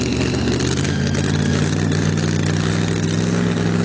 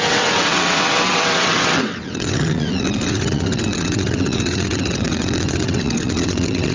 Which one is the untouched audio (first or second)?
first